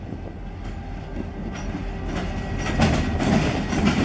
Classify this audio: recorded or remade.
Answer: recorded